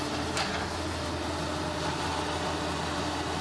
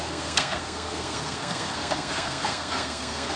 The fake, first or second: second